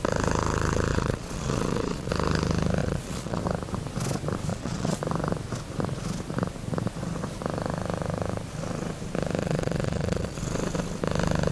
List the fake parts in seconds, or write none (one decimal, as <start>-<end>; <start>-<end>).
0.9-2.1; 2.8-3.4; 4.5-5.0; 9.4-10.4